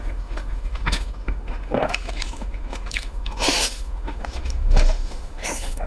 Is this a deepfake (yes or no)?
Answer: yes